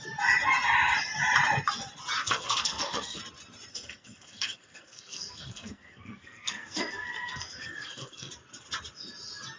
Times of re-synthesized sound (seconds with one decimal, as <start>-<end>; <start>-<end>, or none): 2.2-3.2; 3.7-8.3